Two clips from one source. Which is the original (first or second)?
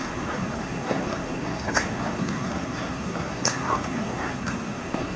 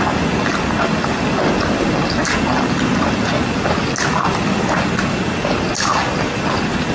second